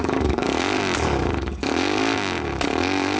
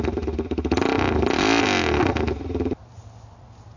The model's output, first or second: first